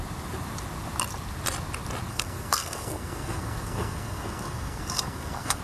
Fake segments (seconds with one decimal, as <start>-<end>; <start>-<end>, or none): 2.1-5.6